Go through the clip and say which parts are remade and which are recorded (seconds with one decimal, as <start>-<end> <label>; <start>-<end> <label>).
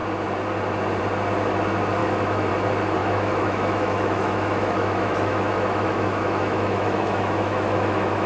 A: 0.0-2.0 recorded; 2.0-2.5 remade; 2.5-3.0 recorded; 3.0-8.3 remade